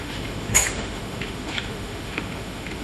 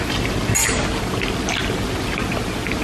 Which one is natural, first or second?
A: second